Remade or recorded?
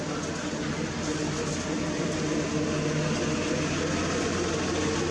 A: recorded